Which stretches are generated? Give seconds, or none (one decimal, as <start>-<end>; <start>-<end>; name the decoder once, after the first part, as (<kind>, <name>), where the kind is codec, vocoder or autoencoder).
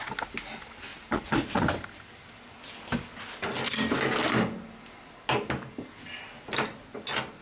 none